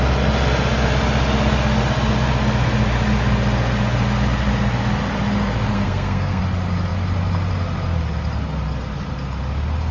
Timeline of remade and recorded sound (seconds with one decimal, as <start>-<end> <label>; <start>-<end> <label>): 0.0-5.7 recorded; 5.7-6.4 remade; 6.4-9.9 recorded